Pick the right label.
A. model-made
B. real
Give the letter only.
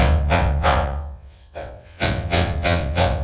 A